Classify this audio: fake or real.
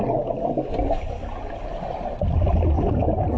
real